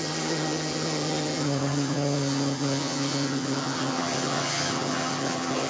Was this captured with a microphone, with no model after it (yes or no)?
no